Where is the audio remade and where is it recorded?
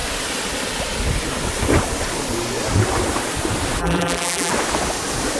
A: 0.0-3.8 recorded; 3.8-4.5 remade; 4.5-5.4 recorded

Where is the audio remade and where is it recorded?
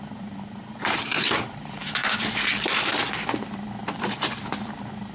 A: 0.0-2.0 remade; 2.0-4.0 recorded; 4.0-5.1 remade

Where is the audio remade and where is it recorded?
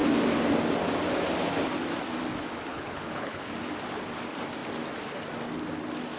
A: 0.0-2.7 recorded; 2.7-3.5 remade; 3.5-6.2 recorded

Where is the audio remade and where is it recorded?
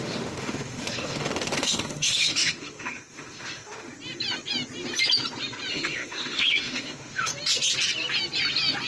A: 0.0-3.9 remade; 3.9-5.7 recorded; 5.7-7.3 remade; 7.3-8.9 recorded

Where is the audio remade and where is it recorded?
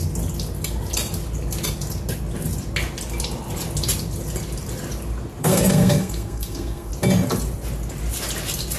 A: 0.0-5.4 recorded; 5.4-6.9 remade; 6.9-8.8 recorded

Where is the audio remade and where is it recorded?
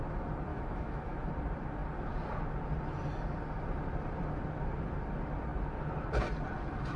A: 0.0-0.5 recorded; 0.5-1.3 remade; 1.3-7.0 recorded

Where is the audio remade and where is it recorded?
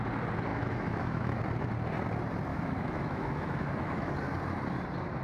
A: 0.0-0.5 recorded; 0.5-1.4 remade; 1.4-2.5 recorded; 2.5-4.1 remade; 4.1-5.2 recorded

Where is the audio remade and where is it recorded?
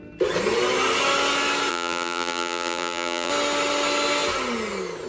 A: 0.0-1.7 recorded; 1.7-3.3 remade; 3.3-5.1 recorded